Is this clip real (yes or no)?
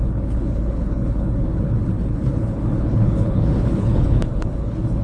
no